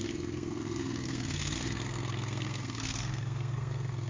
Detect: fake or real fake